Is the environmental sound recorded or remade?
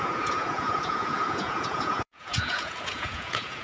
remade